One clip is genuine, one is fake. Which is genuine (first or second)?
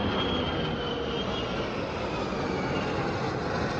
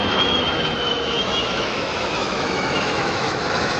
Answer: first